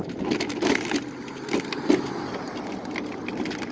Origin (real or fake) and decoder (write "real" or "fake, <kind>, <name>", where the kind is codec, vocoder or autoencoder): real